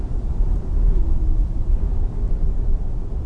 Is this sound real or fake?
real